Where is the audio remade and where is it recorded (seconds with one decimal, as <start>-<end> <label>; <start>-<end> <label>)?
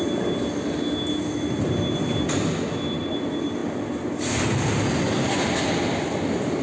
0.0-6.6 recorded